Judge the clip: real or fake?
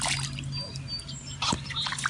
real